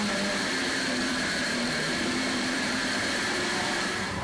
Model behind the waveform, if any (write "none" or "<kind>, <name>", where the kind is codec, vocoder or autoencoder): vocoder, BigVGAN v2